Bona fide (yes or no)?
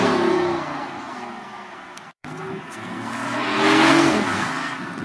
no